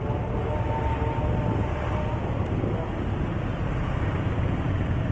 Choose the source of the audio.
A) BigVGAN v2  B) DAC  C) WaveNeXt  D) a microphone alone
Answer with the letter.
D